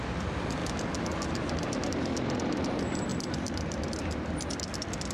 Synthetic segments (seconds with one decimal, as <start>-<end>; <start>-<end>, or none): 0.0-0.6; 1.9-5.1